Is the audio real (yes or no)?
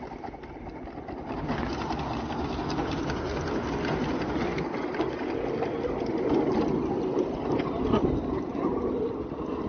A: yes